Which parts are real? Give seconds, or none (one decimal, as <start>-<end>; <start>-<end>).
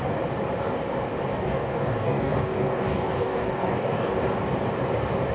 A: 0.0-1.3; 4.2-5.3